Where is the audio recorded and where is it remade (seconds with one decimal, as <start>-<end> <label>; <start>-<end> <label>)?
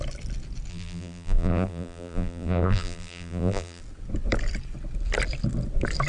0.0-0.7 recorded; 0.7-3.8 remade; 3.8-6.1 recorded